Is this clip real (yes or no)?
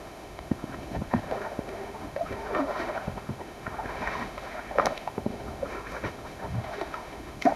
no